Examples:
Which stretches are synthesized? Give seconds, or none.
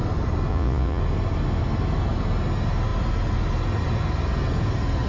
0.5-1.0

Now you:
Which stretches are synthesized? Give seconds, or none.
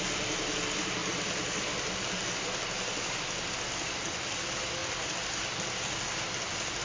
1.0-3.5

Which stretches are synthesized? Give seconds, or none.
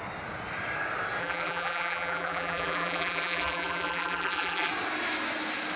1.2-4.7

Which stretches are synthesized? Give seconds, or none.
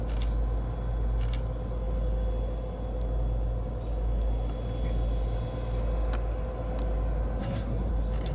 7.4-7.9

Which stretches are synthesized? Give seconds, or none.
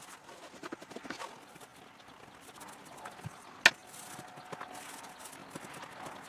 none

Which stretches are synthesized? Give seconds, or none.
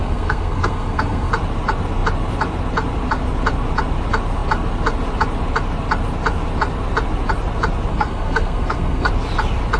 0.0-1.3; 7.9-9.1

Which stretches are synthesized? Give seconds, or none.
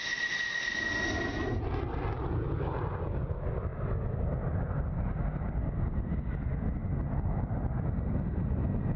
none